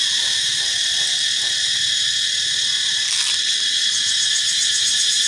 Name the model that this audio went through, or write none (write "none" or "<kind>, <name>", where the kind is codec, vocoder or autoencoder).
none